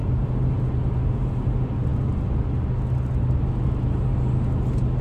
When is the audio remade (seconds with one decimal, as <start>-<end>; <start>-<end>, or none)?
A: none